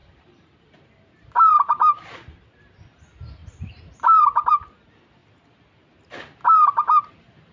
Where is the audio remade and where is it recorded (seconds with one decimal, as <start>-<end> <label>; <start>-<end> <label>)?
0.0-2.6 remade; 2.6-3.4 recorded; 3.4-4.5 remade; 4.5-7.5 recorded